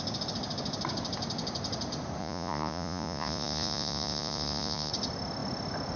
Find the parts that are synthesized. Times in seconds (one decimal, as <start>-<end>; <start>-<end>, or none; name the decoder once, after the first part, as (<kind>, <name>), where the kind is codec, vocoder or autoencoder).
2.2-4.9 (vocoder, Vocos)